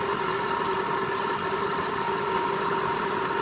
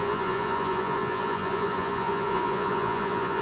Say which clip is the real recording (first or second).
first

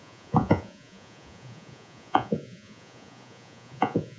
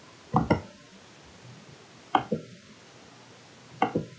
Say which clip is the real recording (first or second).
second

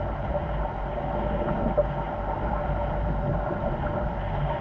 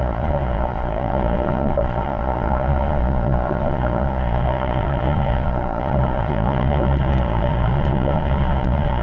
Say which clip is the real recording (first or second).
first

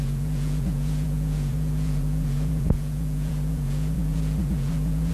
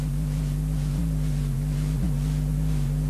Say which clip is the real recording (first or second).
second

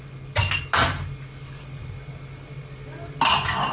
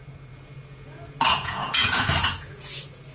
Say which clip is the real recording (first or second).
first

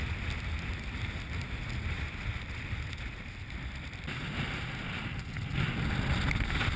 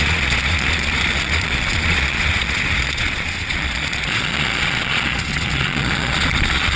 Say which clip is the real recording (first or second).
first